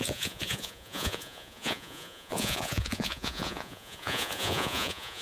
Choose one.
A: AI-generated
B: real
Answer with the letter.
A